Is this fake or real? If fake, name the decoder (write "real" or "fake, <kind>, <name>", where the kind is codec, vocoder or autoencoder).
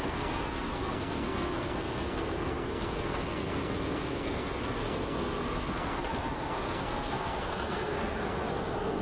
fake, codec, SNAC